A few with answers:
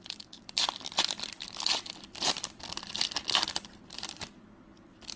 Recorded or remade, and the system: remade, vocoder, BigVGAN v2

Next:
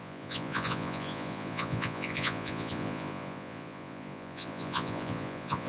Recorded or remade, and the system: remade, vocoder, Vocos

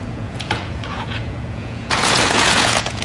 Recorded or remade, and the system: remade, vocoder, Vocos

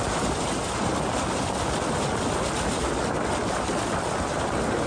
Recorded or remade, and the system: recorded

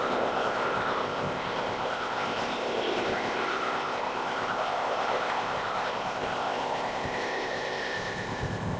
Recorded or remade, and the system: remade, codec, ZipCodec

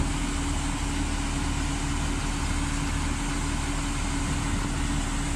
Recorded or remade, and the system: recorded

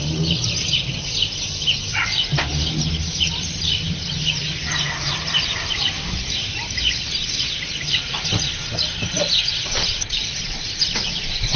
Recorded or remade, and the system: remade, vocoder, BigVGAN v2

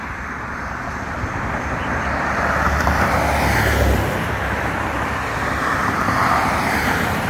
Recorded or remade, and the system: remade, vocoder, BigVGAN v2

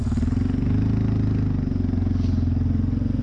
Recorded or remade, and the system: recorded